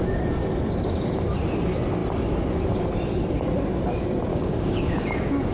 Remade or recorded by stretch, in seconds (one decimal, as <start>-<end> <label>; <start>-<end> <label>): 0.0-4.3 recorded; 4.3-5.5 remade